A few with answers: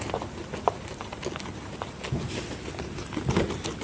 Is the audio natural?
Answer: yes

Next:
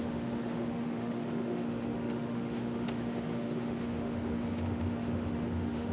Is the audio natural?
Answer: no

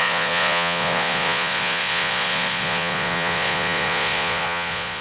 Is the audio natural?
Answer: no